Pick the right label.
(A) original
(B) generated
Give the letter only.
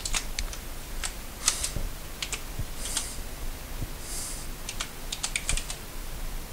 A